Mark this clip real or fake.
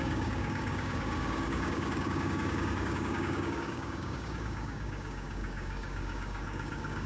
fake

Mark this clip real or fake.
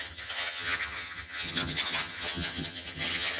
fake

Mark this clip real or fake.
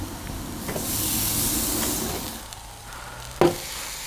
real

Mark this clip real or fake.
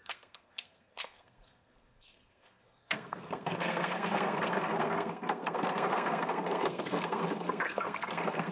fake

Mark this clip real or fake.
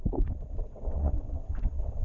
fake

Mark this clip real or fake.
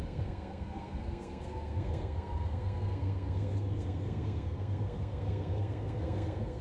fake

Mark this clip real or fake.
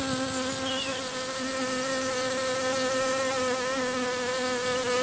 real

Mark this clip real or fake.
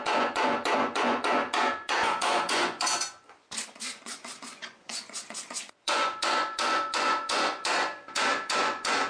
fake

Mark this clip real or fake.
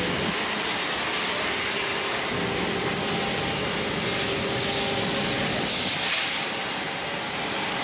real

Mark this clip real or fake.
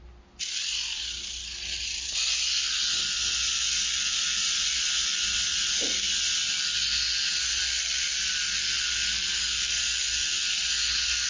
fake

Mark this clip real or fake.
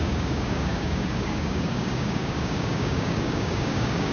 fake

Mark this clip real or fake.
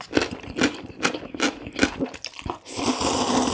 real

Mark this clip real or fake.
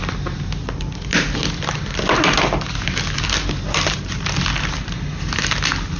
real